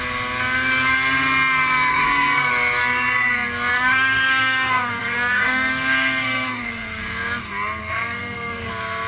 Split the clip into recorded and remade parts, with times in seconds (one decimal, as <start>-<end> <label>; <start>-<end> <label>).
0.0-1.9 recorded; 1.9-2.5 remade; 2.5-3.7 recorded; 3.7-7.0 remade; 7.0-7.8 recorded; 7.8-8.7 remade; 8.7-9.1 recorded